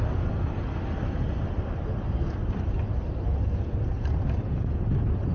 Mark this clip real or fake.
real